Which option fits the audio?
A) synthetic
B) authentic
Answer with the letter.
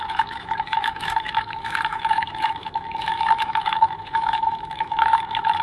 A